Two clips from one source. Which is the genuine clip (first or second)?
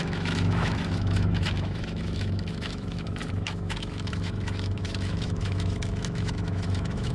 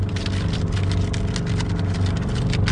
second